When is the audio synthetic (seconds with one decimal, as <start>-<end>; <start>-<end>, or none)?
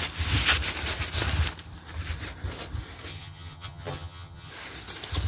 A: 3.1-4.5